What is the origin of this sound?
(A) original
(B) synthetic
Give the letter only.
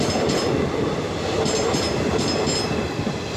A